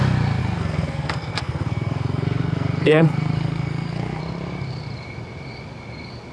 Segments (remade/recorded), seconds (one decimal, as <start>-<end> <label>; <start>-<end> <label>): 0.0-0.4 recorded; 0.4-4.2 remade; 4.2-6.3 recorded